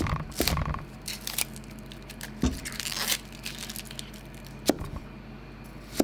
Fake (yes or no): no